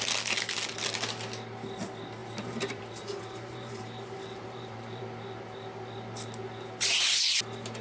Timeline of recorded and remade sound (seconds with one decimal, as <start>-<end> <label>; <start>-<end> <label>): 0.0-2.2 recorded; 2.2-5.0 remade; 5.0-7.8 recorded